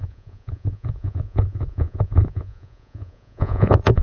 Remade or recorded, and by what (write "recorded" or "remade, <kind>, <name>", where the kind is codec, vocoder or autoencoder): remade, vocoder, Vocos